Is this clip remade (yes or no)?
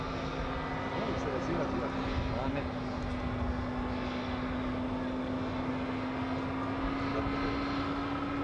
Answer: no